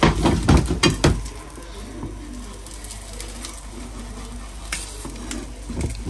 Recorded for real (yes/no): yes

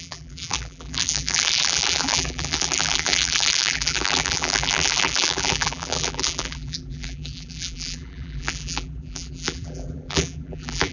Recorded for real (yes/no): no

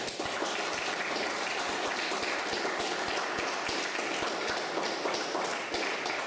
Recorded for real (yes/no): yes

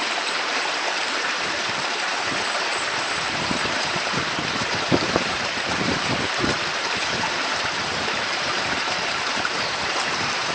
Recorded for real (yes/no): no